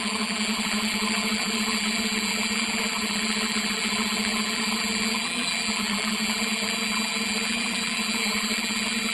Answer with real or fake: fake